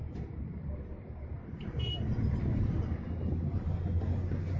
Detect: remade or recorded recorded